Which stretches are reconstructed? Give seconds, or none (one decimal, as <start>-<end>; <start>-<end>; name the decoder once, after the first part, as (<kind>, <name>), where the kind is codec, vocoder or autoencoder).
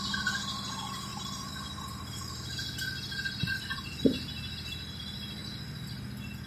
1.1-5.0 (vocoder, BigVGAN v2)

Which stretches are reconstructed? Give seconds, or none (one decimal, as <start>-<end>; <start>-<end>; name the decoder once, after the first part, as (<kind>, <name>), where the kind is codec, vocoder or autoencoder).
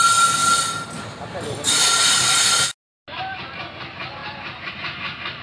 none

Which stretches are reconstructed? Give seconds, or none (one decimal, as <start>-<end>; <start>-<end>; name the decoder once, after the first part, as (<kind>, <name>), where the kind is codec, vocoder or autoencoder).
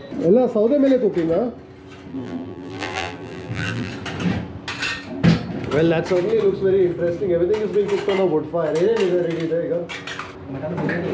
2.1-3.9 (vocoder, BigVGAN v2)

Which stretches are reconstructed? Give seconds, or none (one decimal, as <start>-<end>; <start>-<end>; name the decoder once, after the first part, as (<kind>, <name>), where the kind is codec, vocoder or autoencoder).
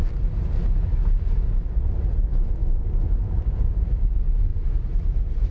none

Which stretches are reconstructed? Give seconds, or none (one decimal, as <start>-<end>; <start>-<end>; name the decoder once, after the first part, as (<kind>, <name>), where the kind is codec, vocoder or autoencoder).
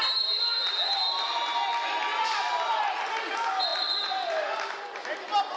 none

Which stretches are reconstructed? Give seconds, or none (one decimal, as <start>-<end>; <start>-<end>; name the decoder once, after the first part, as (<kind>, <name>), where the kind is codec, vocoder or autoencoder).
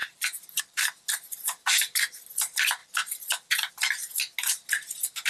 none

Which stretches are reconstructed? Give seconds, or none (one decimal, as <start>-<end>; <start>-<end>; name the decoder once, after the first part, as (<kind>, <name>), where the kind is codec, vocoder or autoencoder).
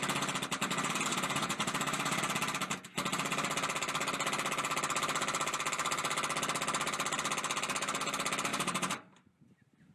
1.1-2.2 (vocoder, BigVGAN v2); 8.5-9.3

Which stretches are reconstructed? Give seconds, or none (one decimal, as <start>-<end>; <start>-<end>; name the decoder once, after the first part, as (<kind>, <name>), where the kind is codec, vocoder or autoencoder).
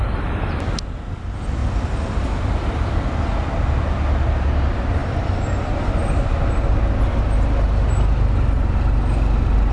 1.6-2.4 (vocoder, BigVGAN v2); 5.0-5.6